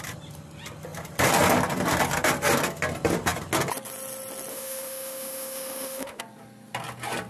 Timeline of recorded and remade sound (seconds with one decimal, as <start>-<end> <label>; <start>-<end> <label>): 0.0-4.5 recorded; 4.5-6.2 remade; 6.2-7.3 recorded